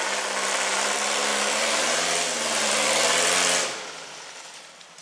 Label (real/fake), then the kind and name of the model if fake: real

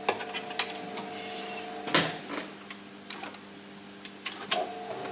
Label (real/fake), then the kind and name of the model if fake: real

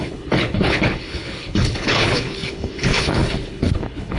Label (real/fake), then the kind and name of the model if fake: fake, codec, HILCodec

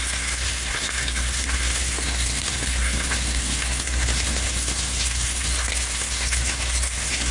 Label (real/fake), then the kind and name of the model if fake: fake, codec, SNAC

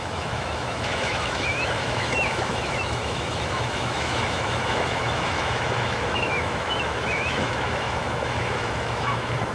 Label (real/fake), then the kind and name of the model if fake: fake, autoencoder, DAC-VAE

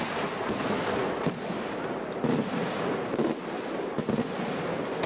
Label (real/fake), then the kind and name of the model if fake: real